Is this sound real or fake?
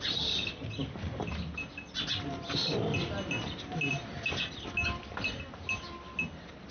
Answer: real